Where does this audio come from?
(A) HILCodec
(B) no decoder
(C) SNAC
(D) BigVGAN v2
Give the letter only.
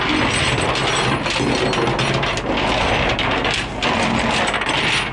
B